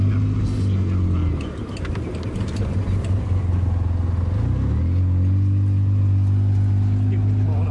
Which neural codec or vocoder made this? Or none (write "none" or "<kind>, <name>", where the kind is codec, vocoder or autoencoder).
none